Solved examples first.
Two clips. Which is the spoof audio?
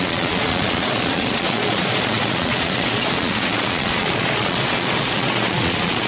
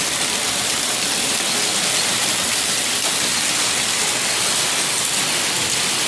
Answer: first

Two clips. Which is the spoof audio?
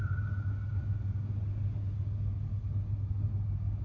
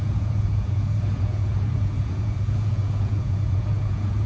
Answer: second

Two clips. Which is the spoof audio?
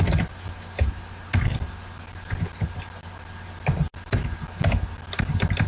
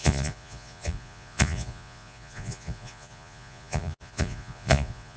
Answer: second